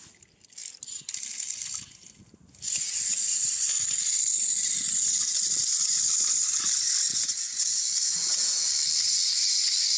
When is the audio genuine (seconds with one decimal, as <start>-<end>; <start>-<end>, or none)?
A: 0.0-7.1; 8.7-10.0